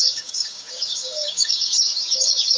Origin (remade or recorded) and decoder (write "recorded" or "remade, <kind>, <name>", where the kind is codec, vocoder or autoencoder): remade, codec, DAC